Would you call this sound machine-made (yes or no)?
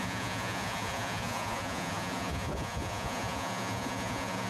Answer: yes